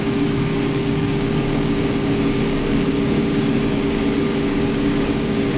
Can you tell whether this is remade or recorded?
remade